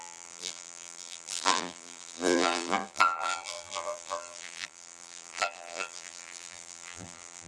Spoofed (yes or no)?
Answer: yes